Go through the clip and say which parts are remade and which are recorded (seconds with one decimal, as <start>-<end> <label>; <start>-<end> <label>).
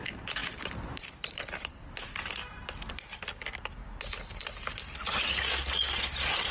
0.0-6.5 recorded